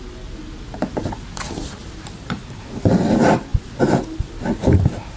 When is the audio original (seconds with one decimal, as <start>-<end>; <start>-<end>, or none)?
0.0-5.2